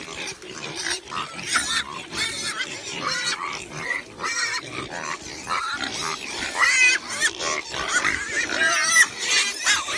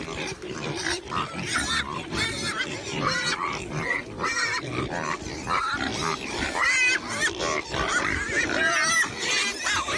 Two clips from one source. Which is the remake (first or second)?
first